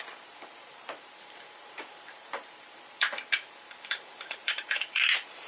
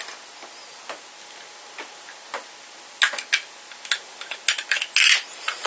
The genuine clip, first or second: second